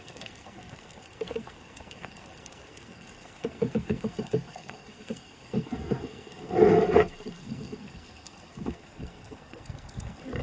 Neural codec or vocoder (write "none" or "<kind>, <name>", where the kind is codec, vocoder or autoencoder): codec, SNAC